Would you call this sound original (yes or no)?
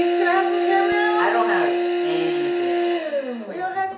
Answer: yes